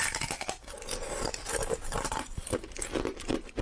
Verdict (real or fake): real